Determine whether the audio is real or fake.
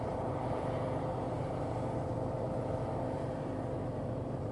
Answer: fake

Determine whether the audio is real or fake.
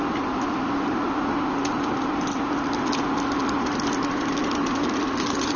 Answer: fake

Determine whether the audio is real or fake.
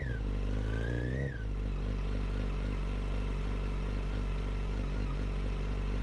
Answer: real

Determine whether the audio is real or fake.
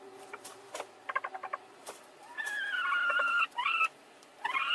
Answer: real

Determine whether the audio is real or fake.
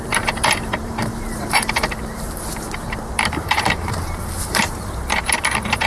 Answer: fake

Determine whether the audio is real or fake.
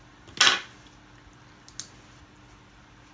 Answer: real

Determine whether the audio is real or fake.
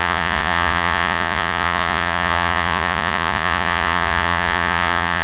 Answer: fake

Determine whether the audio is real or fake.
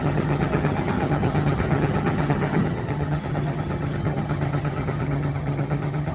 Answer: fake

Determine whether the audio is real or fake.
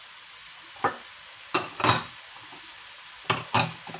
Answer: real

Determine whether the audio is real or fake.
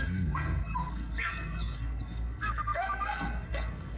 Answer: fake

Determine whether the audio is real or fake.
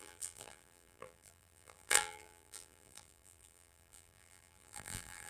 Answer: fake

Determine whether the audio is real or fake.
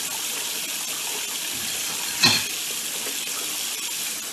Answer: real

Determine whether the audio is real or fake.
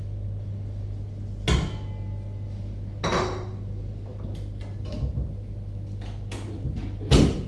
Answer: real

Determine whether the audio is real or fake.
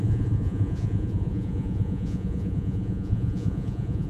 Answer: fake